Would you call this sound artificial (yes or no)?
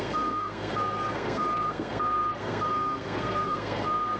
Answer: yes